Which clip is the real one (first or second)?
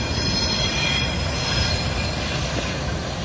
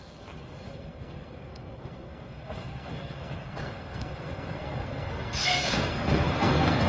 first